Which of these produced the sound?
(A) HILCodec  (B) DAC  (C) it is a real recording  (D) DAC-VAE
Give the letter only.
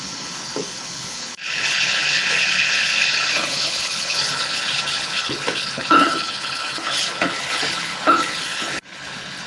A